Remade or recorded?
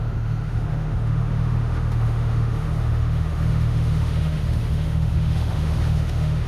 remade